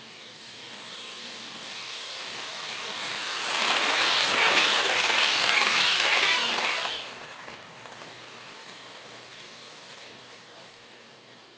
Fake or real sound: fake